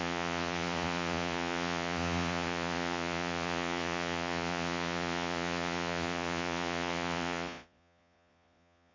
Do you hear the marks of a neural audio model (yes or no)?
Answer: yes